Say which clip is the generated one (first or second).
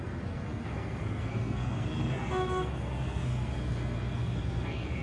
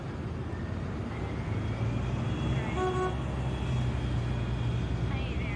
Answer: first